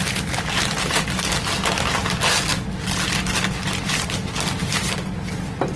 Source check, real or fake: real